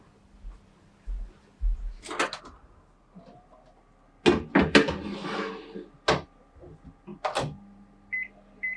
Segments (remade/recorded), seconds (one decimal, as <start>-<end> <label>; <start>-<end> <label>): 0.0-8.8 recorded